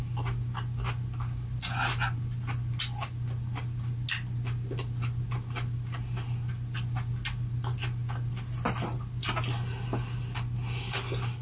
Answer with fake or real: real